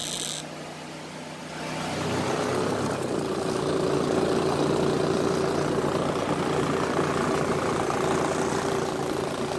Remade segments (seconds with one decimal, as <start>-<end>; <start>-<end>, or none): none